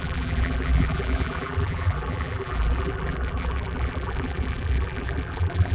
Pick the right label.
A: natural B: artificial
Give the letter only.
B